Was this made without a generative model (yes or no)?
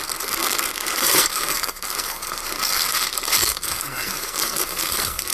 no